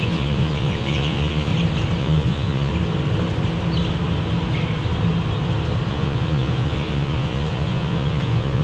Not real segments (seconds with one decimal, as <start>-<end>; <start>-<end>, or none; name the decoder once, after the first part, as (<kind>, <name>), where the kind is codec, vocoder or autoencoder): 0.0-1.5 (vocoder, Vocos); 2.0-2.7; 5.9-8.6